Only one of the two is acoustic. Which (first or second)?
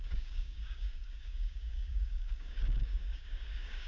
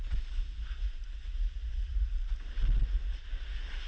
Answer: second